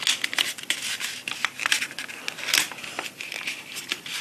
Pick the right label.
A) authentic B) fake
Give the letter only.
A